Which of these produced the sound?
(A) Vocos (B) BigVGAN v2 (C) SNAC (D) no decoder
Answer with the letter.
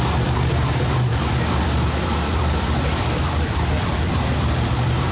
B